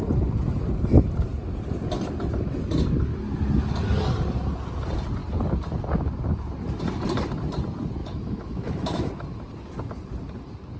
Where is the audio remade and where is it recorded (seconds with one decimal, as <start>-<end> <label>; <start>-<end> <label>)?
0.0-8.0 recorded; 8.0-9.1 remade; 9.1-10.8 recorded